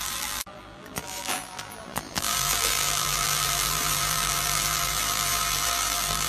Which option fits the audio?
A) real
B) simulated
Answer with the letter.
B